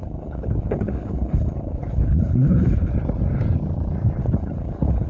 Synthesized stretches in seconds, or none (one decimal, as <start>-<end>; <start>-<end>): 0.0-2.9; 4.2-5.1

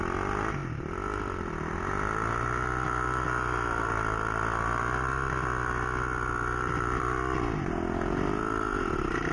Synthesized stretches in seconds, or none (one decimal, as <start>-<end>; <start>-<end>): none

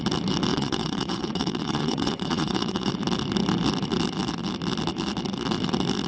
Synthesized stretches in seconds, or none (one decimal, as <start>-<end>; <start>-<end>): 0.5-2.9

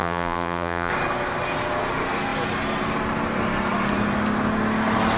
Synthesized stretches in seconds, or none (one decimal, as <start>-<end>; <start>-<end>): 0.0-0.9

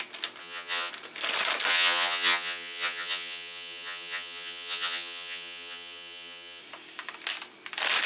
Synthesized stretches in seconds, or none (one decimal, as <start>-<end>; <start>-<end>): 0.4-0.9; 1.7-6.6